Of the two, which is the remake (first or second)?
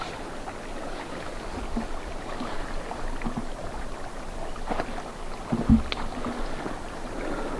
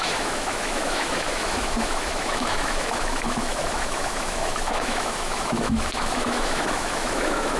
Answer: second